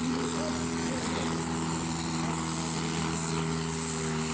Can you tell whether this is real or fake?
real